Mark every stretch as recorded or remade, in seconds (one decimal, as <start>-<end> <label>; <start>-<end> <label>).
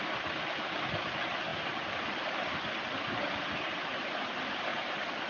0.0-5.3 recorded